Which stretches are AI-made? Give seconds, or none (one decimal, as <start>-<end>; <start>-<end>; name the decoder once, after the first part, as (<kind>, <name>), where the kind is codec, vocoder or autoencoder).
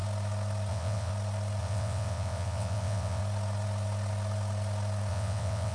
0.7-1.1 (vocoder, WaveNeXt); 1.6-3.2; 5.1-5.7